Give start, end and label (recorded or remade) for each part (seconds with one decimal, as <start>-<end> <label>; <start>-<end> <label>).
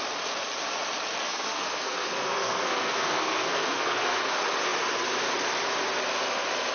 0.0-1.2 recorded; 1.2-4.3 remade; 4.3-6.7 recorded